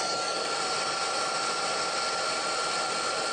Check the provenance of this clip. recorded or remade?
recorded